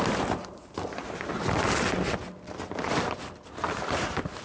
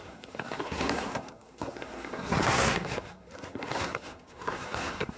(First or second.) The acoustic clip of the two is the first